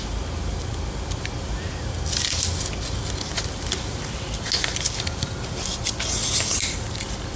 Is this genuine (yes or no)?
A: yes